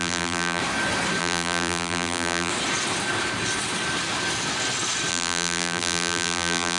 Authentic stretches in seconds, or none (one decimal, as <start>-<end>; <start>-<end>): 0.6-1.2; 2.5-5.1

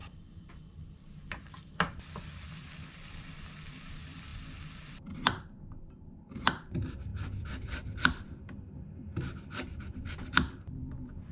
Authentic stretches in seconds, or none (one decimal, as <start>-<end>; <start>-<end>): none

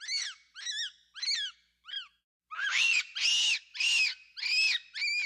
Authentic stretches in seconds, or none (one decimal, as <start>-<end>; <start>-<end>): 0.0-2.3; 3.0-5.3

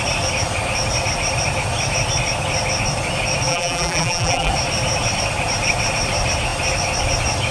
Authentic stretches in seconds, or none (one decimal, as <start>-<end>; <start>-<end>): 0.0-3.5; 4.5-7.5

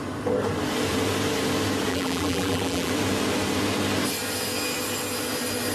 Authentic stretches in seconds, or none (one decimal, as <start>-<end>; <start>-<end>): 0.0-1.9; 2.9-5.7

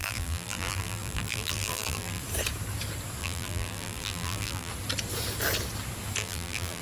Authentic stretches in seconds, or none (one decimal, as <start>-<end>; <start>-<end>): 2.2-3.2; 4.7-6.2

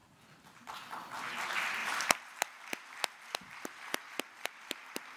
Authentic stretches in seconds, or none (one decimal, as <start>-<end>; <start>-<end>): 0.0-1.8